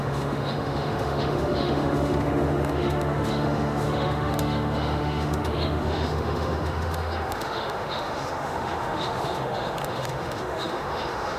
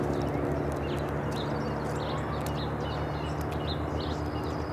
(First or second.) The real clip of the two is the second